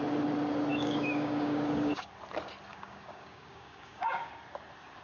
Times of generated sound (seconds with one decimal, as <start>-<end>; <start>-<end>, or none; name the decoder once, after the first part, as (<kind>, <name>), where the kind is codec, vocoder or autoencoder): 0.7-2.1 (codec, DAC); 2.7-4.3